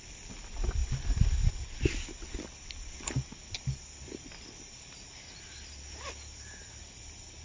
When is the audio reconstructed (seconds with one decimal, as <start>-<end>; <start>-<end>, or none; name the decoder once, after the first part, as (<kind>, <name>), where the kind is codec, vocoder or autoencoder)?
none